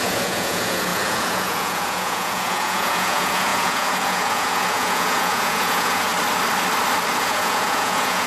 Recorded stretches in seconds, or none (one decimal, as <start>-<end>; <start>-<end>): 6.1-7.2